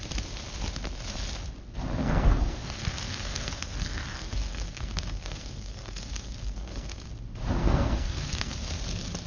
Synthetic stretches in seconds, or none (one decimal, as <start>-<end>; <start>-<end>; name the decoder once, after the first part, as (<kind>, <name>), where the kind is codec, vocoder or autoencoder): 2.0-7.1 (codec, SNAC); 7.6-8.5